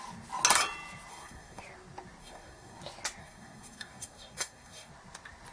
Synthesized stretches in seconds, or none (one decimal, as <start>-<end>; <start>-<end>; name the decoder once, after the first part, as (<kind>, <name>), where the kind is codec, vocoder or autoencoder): 1.1-1.6 (codec, SNAC); 2.2-2.8; 3.2-4.9